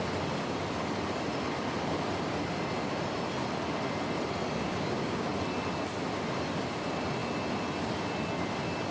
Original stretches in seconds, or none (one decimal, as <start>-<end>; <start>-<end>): 0.0-4.7; 5.3-8.9